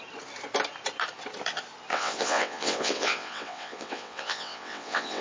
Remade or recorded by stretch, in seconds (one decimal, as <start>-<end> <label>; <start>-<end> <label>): 0.0-1.9 recorded; 1.9-5.2 remade